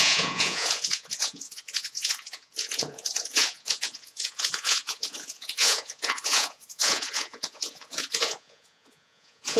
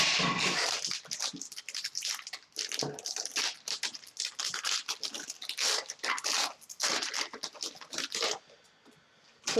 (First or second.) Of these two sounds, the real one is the second